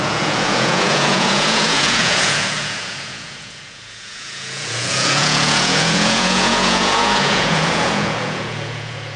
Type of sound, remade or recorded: remade